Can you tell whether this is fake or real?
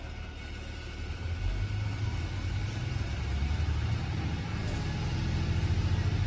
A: real